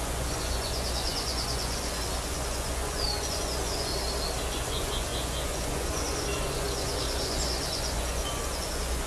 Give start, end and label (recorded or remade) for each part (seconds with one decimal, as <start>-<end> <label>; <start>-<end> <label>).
0.0-3.9 remade; 3.9-4.5 recorded; 4.5-9.1 remade